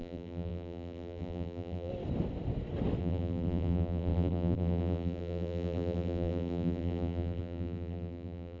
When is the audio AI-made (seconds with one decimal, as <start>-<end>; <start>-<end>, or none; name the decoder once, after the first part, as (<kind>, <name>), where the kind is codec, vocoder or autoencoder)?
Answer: 0.0-1.9 (vocoder, BigVGAN v2); 3.0-8.6